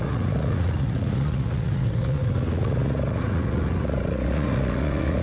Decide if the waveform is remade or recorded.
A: remade